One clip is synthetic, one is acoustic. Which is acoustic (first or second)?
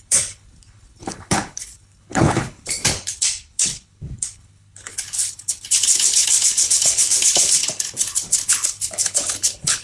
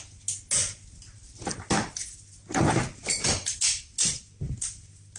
second